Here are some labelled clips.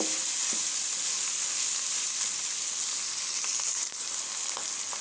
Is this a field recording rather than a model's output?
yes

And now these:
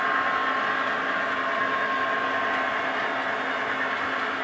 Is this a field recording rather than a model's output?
yes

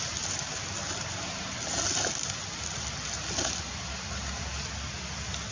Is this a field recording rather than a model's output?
yes